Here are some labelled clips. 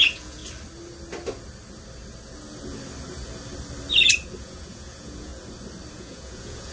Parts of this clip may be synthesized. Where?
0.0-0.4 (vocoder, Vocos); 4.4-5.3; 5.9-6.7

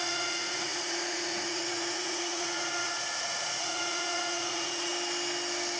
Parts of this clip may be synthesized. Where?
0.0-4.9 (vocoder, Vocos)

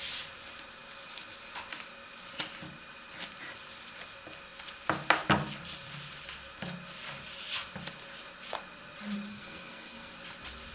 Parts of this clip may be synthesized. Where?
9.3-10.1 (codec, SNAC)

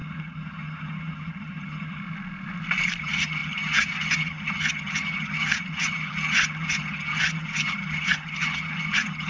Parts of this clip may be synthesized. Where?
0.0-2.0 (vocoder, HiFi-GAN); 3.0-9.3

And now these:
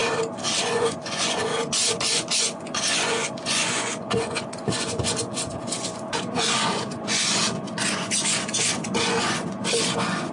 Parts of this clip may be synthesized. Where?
0.6-10.3 (vocoder, Vocos)

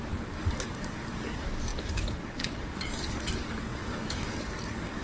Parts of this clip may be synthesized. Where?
0.0-5.0 (codec, DAC)

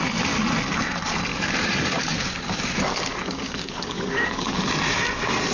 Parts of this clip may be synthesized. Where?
1.3-4.6 (codec, DAC)